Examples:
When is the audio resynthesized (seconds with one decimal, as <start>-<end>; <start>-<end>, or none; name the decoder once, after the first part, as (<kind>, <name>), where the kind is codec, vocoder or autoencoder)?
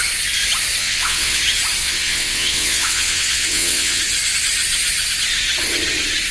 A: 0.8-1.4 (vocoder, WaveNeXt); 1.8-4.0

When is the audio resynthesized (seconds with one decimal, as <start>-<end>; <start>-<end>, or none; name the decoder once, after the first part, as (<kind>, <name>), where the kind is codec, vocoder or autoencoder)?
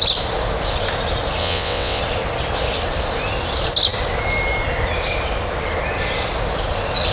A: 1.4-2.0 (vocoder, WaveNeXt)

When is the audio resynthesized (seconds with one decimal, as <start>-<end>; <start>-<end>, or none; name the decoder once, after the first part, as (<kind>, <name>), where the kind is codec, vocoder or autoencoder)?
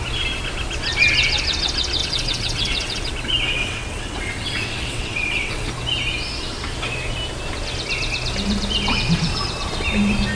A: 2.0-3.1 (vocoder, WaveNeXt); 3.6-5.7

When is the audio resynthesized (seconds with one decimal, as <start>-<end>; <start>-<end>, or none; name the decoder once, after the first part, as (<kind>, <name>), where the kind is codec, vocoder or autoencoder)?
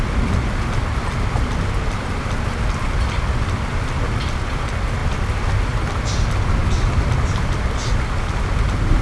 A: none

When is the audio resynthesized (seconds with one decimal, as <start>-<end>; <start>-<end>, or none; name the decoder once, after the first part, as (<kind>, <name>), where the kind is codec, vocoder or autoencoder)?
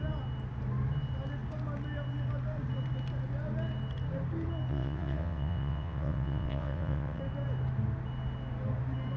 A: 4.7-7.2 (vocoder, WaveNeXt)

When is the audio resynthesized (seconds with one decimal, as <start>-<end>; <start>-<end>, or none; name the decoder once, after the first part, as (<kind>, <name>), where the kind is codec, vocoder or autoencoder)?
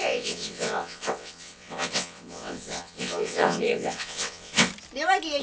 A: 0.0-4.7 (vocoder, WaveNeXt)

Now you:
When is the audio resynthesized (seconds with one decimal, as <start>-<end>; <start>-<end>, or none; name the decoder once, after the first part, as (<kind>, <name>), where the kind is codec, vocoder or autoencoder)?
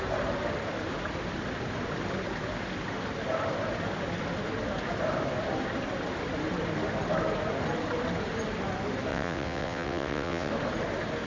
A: 9.1-10.5 (vocoder, WaveNeXt)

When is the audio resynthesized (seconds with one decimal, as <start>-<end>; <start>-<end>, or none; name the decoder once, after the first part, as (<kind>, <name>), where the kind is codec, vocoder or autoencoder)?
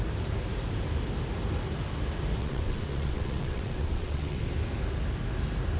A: 2.4-4.4 (vocoder, WaveNeXt)